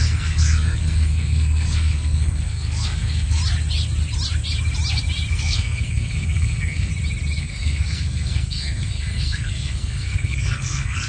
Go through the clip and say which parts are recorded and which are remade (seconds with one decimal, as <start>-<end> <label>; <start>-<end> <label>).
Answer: 0.0-3.4 remade; 3.4-5.3 recorded; 5.3-6.9 remade; 6.9-7.4 recorded; 7.4-11.1 remade